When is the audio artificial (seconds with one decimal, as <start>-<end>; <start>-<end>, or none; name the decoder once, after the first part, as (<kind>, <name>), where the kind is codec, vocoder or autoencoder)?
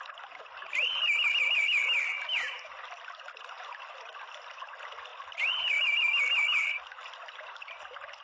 0.0-1.8 (vocoder, BigVGAN v2); 3.3-8.2